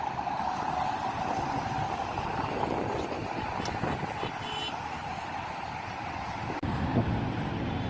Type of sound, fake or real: real